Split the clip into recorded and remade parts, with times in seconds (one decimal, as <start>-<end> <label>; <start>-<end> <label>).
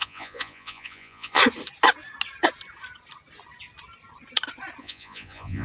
0.0-1.4 remade; 1.4-4.8 recorded; 4.8-5.6 remade